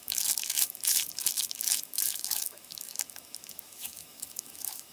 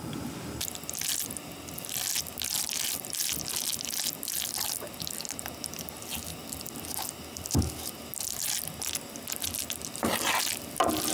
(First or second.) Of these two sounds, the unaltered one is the second